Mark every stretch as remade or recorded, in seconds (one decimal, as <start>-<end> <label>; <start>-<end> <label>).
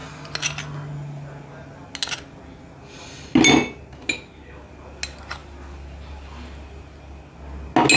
0.0-8.0 recorded